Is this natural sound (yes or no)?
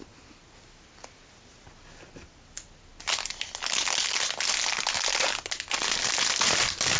yes